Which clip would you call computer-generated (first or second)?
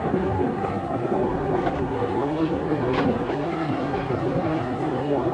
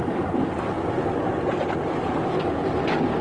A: first